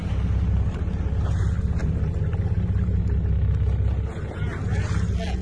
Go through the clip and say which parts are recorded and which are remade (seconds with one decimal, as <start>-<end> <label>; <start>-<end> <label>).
0.0-5.4 recorded

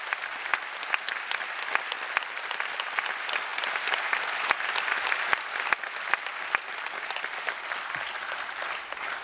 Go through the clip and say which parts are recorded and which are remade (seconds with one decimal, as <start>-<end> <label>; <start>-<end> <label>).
0.0-9.2 recorded